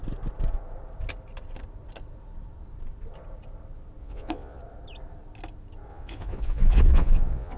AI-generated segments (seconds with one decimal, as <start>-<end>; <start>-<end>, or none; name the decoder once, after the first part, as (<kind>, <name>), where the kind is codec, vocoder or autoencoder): 4.0-4.6 (vocoder, Vocos); 5.9-7.6